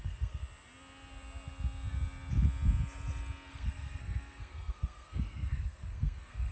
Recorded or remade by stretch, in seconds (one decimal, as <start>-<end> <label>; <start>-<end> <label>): 0.0-0.4 remade; 0.4-3.5 recorded; 3.5-6.5 remade